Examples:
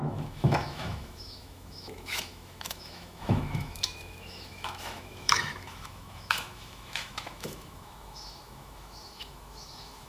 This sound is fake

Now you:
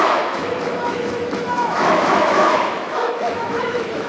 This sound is fake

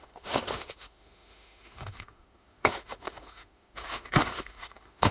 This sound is fake